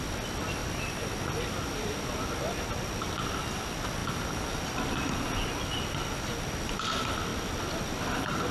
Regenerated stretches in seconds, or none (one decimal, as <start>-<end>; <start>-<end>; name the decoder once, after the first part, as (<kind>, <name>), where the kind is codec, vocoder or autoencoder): 0.6-1.4 (vocoder, BigVGAN v2); 4.0-6.8